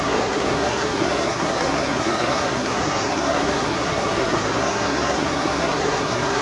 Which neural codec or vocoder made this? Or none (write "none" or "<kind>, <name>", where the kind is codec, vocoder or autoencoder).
codec, SNAC